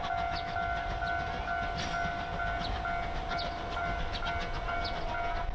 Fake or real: real